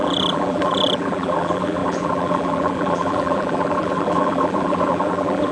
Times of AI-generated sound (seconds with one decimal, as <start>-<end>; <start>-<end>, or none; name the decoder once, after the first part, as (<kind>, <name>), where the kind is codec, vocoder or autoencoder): 0.0-5.5 (vocoder, BigVGAN v2)